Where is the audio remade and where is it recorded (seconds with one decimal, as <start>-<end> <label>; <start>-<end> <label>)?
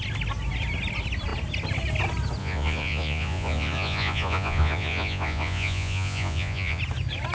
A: 0.0-2.4 recorded; 2.4-6.8 remade; 6.8-7.3 recorded